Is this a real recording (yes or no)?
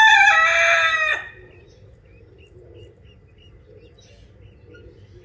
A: yes